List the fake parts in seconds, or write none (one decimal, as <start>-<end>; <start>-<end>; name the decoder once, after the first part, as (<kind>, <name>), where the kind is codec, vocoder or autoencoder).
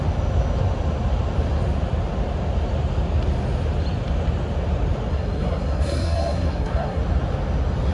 5.1-7.0 (codec, SNAC)